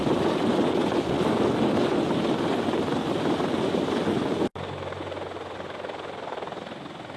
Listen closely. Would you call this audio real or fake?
real